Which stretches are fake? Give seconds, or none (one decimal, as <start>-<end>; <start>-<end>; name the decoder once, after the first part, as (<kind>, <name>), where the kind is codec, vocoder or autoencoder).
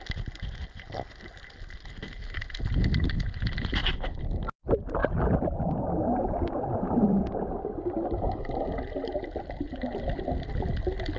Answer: 5.0-6.3 (vocoder, BigVGAN v2); 6.7-10.2